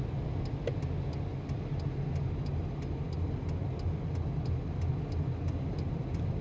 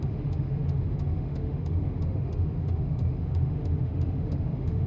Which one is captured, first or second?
first